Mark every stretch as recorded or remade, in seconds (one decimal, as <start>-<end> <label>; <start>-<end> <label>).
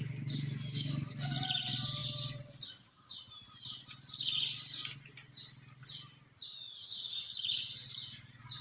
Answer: 0.0-8.6 recorded